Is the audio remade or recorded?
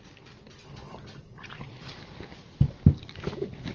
remade